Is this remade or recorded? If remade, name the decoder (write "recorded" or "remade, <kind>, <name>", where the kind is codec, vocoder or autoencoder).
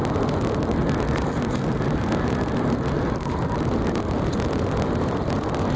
recorded